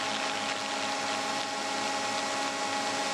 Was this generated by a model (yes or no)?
no